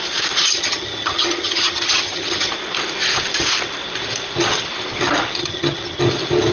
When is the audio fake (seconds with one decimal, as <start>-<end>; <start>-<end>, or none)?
0.5-2.5; 5.4-6.0

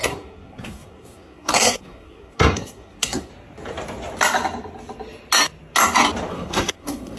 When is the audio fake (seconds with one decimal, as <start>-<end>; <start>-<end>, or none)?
0.0-3.3; 6.3-7.2

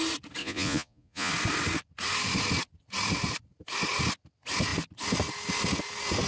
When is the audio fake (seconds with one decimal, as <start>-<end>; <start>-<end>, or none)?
0.4-1.3

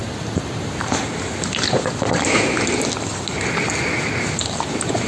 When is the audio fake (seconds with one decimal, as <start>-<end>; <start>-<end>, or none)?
none

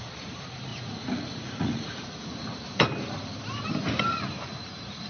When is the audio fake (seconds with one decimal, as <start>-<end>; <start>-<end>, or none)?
0.7-2.6

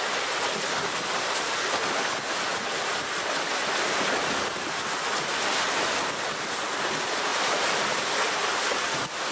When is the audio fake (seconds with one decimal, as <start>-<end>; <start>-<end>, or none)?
7.3-8.1

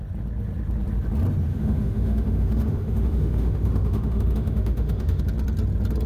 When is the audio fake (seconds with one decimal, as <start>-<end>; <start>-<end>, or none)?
1.5-5.2